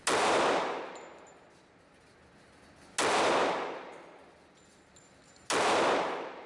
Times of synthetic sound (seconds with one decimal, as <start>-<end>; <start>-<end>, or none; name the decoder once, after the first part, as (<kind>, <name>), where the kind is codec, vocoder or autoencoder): none